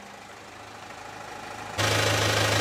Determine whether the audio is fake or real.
real